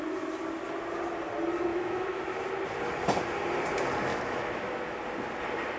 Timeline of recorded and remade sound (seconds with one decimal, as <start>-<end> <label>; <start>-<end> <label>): 0.0-1.7 recorded; 1.7-2.2 remade; 2.2-4.1 recorded; 4.1-5.0 remade; 5.0-5.8 recorded